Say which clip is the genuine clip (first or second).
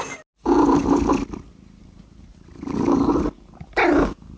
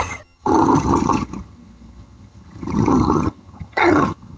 first